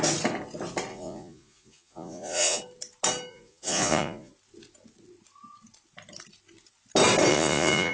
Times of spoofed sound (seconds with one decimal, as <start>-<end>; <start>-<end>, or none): 0.9-2.6; 3.3-4.3; 7.3-7.9